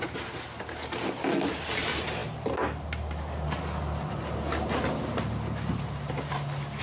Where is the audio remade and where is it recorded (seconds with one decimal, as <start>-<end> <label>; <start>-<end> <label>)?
0.0-6.8 recorded